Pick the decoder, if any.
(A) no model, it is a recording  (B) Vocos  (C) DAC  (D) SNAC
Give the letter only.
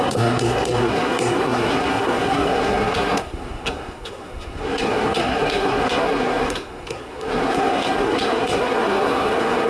D